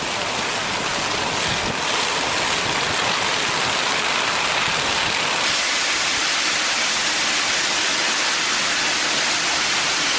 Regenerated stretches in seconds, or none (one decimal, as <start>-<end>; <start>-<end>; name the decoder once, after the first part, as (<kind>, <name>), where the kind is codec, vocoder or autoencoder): none